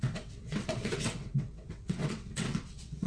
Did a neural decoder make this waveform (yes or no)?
yes